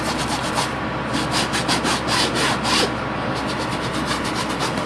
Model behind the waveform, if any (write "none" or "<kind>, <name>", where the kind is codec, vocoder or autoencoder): none